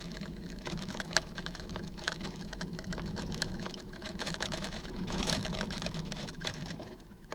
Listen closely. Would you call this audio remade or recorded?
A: remade